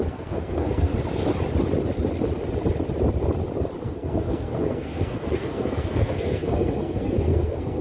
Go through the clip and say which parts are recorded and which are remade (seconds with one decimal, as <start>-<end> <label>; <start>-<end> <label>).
0.0-0.9 remade; 0.9-3.8 recorded; 3.8-7.8 remade